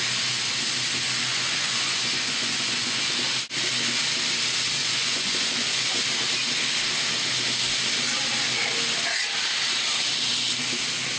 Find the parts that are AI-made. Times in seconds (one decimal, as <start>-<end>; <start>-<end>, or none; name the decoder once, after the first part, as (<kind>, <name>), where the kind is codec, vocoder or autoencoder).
1.3-3.0 (vocoder, Vocos); 4.8-6.0